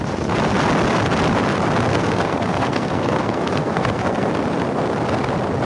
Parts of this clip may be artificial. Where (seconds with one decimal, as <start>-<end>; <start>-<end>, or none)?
1.9-4.3